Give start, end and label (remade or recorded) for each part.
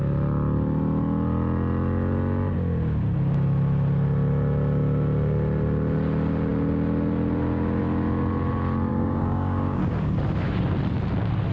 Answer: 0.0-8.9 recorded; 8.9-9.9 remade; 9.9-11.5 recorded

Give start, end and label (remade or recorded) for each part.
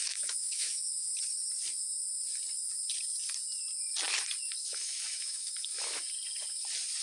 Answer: 0.0-1.1 remade; 1.1-4.6 recorded; 4.6-6.0 remade; 6.0-7.0 recorded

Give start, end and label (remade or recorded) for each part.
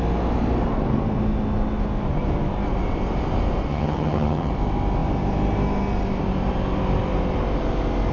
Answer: 0.0-3.7 recorded; 3.7-4.5 remade; 4.5-8.1 recorded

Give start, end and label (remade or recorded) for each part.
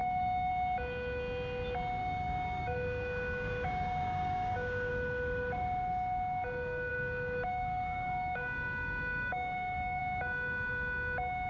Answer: 0.0-0.5 remade; 0.5-2.0 recorded; 2.0-4.9 remade; 4.9-6.9 recorded; 6.9-10.0 remade; 10.0-11.5 recorded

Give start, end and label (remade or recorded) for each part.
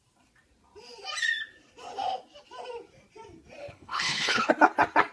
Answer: 0.0-3.6 recorded; 3.6-4.5 remade; 4.5-5.1 recorded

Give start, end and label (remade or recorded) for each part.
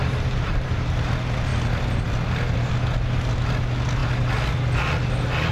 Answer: 0.0-0.7 remade; 0.7-5.5 recorded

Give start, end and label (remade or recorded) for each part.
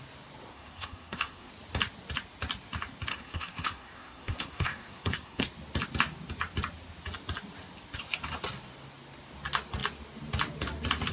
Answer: 0.0-0.5 recorded; 0.5-1.5 remade; 1.5-3.1 recorded; 3.1-5.4 remade; 5.4-11.1 recorded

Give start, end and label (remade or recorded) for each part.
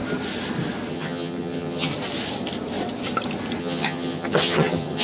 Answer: 0.0-0.9 recorded; 0.9-1.9 remade; 1.9-3.6 recorded; 3.6-5.0 remade